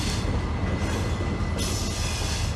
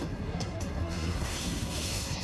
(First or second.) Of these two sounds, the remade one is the second